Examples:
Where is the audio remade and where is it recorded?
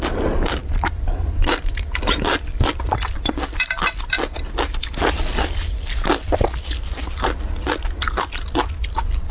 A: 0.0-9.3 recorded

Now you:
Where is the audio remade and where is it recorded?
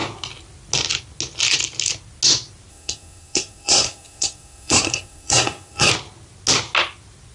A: 0.0-2.7 recorded; 2.7-5.9 remade; 5.9-7.3 recorded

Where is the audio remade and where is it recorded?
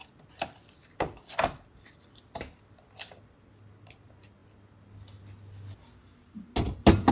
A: 0.0-7.1 recorded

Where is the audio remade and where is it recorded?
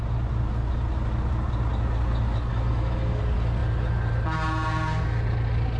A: 0.0-2.5 recorded; 2.5-3.2 remade; 3.2-5.8 recorded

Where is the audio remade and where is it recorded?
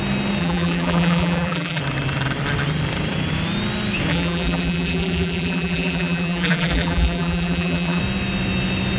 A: 0.0-0.4 recorded; 0.4-1.8 remade; 1.8-4.1 recorded; 4.1-8.0 remade; 8.0-9.0 recorded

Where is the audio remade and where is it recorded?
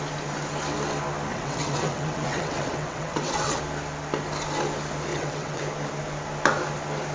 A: 0.0-1.3 recorded; 1.3-3.6 remade; 3.6-5.1 recorded; 5.1-5.6 remade; 5.6-7.1 recorded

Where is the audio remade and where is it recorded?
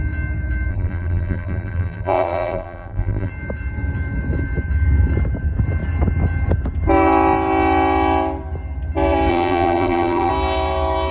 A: 0.0-0.7 recorded; 0.7-3.3 remade; 3.3-9.3 recorded; 9.3-10.3 remade; 10.3-11.1 recorded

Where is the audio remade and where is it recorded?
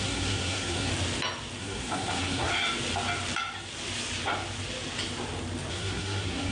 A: 0.0-0.9 remade; 0.9-1.6 recorded; 1.6-2.5 remade; 2.5-5.7 recorded; 5.7-6.5 remade